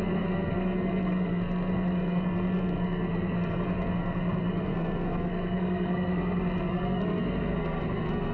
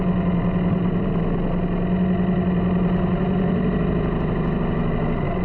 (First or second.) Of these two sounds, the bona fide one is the second